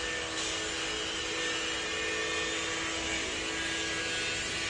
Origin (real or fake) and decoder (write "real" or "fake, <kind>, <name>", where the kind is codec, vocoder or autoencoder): real